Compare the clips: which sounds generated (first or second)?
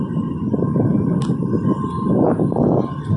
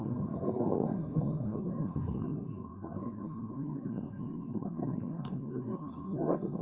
second